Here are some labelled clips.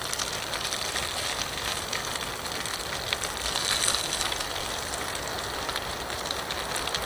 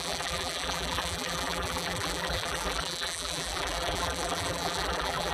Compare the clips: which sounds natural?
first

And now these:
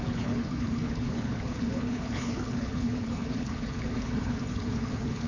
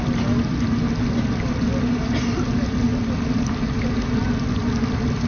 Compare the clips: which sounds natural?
second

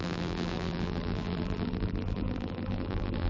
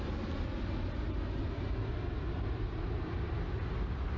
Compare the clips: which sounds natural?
second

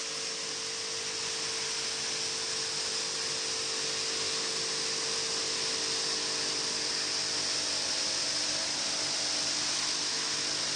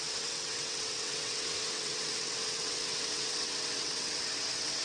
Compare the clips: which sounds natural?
first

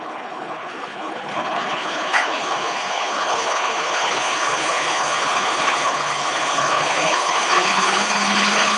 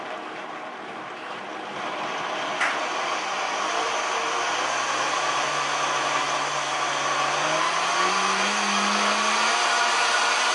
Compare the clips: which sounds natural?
second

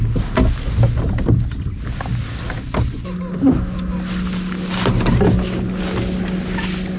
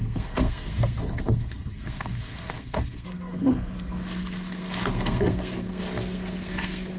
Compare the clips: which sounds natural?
first